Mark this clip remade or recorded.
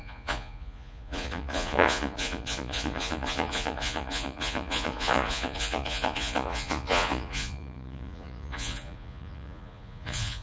remade